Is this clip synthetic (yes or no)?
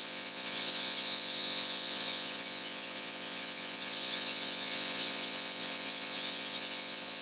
yes